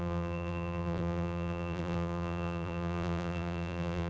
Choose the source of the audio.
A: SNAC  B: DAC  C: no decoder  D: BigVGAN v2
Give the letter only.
D